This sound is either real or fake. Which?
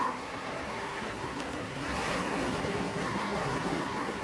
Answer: fake